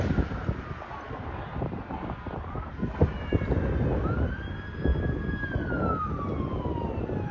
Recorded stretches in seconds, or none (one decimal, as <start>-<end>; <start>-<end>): 4.9-6.0